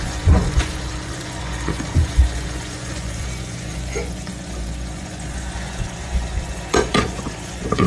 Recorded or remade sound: remade